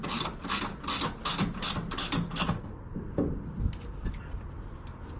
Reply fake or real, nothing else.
real